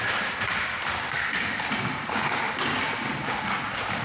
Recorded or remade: recorded